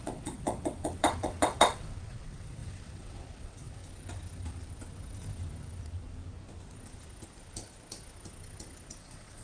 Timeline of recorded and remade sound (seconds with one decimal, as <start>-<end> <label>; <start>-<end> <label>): 0.0-3.8 remade; 3.8-9.0 recorded; 9.0-9.4 remade